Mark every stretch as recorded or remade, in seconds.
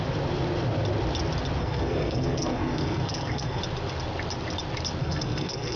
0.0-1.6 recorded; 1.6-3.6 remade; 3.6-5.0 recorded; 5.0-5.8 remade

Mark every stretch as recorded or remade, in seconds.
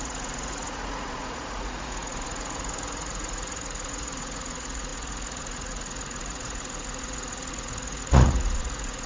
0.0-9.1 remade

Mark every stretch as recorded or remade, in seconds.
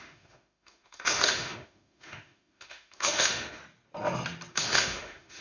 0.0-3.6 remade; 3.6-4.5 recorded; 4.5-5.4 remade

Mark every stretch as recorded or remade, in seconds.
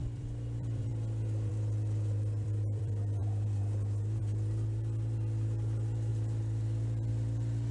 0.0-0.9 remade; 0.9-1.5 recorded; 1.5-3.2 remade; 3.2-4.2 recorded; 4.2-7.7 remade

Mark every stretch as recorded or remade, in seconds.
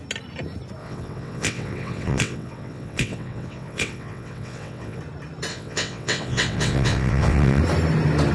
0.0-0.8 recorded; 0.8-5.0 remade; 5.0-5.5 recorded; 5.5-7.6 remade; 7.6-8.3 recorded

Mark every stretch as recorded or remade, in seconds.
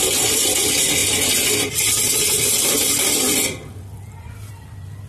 0.0-5.1 recorded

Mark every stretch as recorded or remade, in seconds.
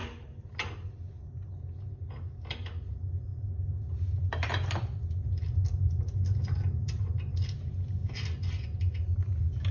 0.0-9.7 recorded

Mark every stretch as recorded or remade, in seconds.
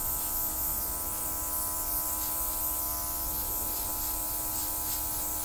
0.0-5.4 recorded